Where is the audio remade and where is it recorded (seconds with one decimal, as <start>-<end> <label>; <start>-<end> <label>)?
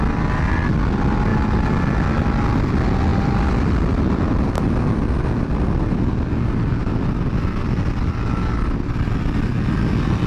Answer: 0.0-1.3 recorded; 1.3-1.9 remade; 1.9-3.1 recorded; 3.1-4.1 remade; 4.1-10.3 recorded